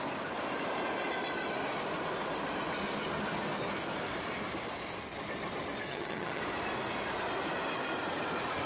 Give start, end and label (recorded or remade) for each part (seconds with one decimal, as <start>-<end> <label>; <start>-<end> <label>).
0.0-5.9 recorded; 5.9-6.4 remade; 6.4-8.7 recorded